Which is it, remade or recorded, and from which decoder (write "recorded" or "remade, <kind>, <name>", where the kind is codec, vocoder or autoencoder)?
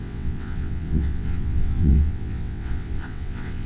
remade, vocoder, WaveNeXt